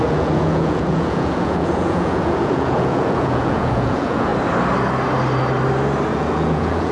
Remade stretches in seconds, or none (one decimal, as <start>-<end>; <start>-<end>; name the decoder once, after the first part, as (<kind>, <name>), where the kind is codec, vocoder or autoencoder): 0.0-4.3 (vocoder, Vocos); 6.1-6.9